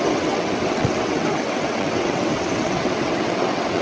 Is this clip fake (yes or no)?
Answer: yes